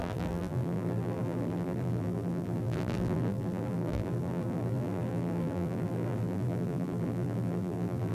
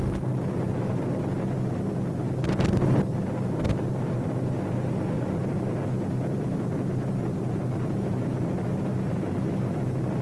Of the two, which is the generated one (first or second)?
first